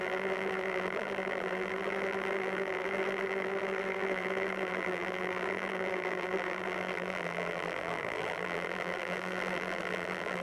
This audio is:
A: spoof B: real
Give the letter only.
A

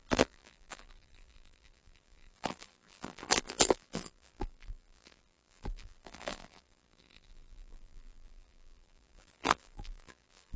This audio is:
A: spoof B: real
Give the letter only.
A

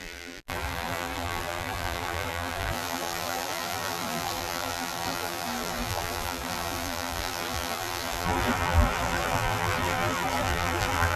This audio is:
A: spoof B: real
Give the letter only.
A